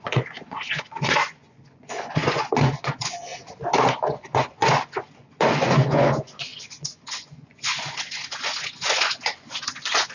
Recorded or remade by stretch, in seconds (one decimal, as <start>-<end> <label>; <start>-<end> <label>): 0.0-3.3 remade; 3.3-4.0 recorded; 4.0-10.1 remade